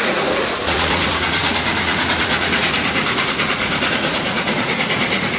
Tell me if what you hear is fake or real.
fake